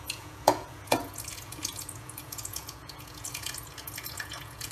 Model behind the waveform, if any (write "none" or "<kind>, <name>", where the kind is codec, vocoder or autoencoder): vocoder, Vocos